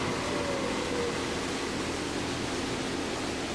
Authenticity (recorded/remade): recorded